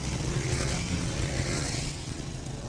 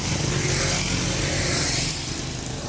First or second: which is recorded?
second